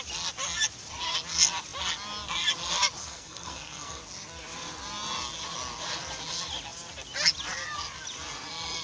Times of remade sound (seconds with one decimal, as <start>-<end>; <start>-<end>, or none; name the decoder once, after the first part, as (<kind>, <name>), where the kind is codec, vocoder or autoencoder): 3.0-4.0 (codec, SNAC)

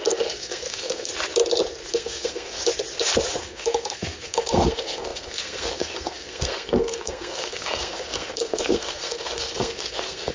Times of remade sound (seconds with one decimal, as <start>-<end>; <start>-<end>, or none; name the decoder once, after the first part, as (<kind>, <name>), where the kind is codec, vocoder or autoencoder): 0.0-1.1 (codec, SNAC); 1.9-2.6; 3.4-10.3

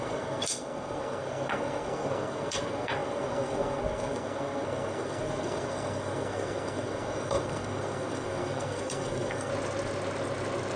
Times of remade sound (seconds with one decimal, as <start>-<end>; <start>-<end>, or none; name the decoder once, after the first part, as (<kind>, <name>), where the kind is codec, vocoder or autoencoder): 0.0-9.5 (codec, SNAC)

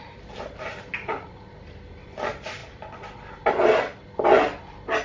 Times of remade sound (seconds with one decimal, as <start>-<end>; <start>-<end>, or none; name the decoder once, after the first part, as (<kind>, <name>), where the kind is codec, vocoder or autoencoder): none

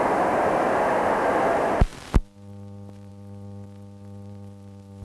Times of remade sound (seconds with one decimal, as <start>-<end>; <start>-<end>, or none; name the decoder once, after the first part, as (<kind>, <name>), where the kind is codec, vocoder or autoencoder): none

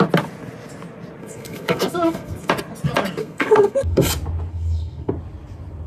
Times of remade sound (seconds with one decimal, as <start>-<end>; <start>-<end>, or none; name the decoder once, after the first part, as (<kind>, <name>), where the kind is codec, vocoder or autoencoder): 1.2-2.5 (codec, SNAC); 3.2-4.1; 4.5-5.1

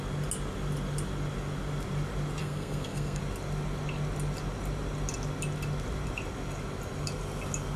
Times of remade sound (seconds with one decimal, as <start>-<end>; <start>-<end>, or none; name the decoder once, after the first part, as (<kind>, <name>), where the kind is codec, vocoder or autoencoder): 2.4-3.2 (codec, SNAC)